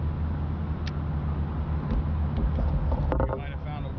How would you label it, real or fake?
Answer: real